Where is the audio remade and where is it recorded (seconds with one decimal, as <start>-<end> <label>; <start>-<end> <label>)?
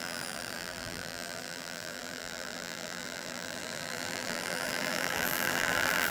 0.0-6.1 remade